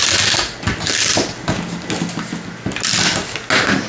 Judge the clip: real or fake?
real